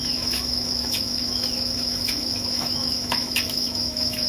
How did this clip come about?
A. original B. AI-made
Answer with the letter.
B